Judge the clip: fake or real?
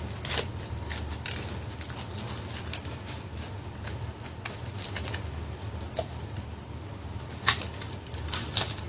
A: real